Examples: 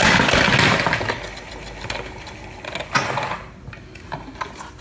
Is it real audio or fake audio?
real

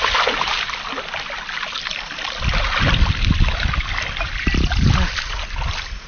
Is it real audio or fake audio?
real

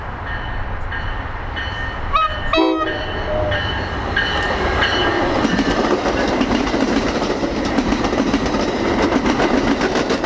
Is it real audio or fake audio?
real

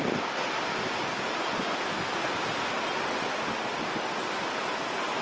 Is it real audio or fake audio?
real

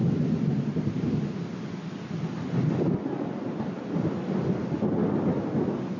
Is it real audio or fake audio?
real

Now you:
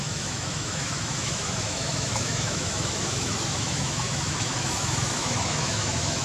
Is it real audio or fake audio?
fake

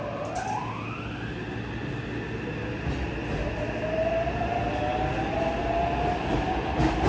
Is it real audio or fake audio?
real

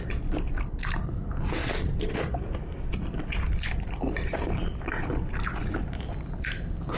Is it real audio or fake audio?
real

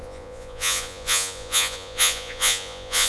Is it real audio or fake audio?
fake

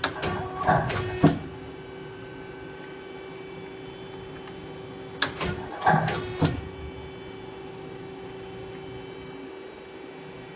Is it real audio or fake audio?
real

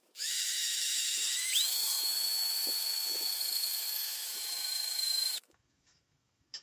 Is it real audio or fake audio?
fake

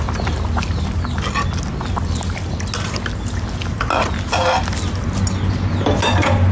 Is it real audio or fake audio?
real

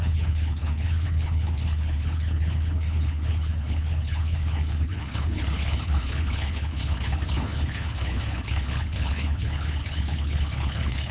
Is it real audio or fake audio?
fake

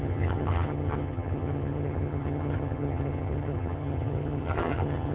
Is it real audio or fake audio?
fake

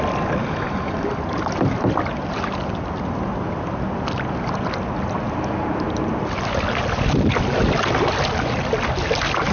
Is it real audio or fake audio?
real